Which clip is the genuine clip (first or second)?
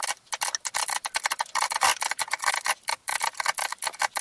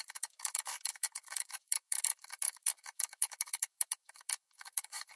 first